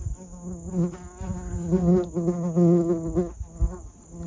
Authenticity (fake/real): real